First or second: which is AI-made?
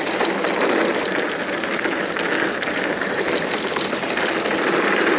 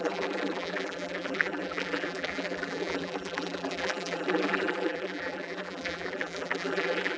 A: second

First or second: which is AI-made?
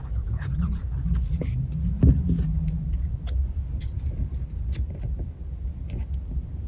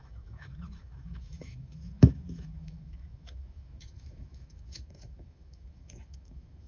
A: second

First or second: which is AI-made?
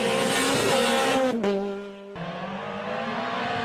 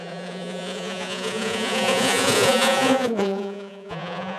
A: second